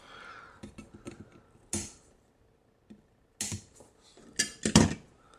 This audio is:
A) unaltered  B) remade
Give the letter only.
A